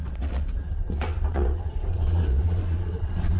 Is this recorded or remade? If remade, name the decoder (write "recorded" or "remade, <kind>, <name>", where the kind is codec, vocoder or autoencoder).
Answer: remade, vocoder, Vocos